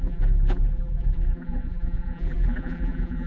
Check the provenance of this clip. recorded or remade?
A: remade